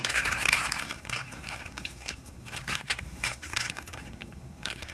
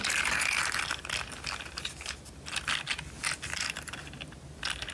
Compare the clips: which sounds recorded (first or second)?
second